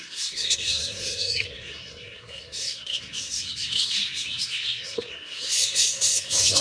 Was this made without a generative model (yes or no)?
no